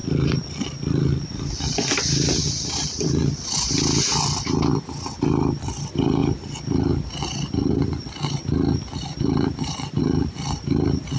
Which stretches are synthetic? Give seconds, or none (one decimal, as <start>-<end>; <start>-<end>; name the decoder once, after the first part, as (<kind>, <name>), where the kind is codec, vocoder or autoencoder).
none